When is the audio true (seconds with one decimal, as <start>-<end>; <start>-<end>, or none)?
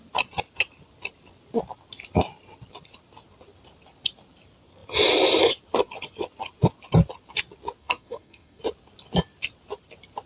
0.0-7.8; 8.6-10.3